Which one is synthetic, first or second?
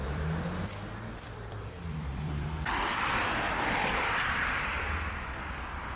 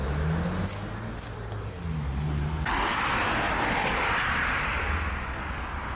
first